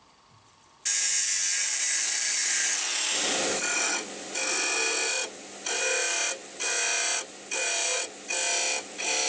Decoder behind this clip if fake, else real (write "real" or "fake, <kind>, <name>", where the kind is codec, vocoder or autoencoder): real